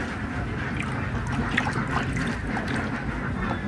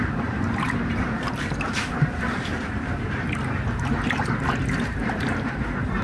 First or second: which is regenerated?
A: second